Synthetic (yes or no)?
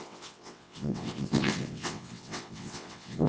yes